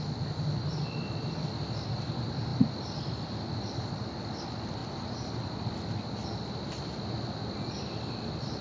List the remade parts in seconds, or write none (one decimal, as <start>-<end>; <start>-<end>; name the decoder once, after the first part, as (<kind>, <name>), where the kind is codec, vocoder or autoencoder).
2.5-3.1 (vocoder, BigVGAN v2); 4.8-6.5